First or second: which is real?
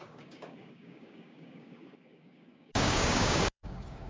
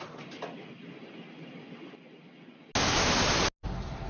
second